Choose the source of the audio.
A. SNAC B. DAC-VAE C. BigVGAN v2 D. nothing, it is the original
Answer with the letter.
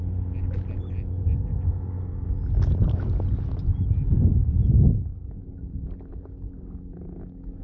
D